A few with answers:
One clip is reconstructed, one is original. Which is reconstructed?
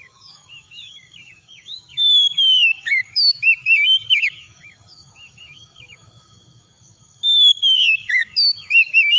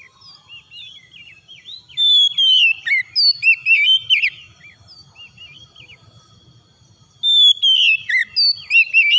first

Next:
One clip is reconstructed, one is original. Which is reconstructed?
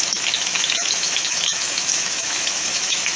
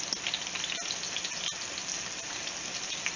first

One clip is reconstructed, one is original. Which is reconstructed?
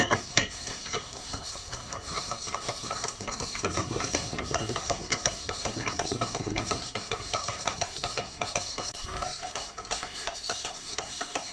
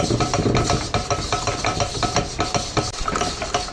first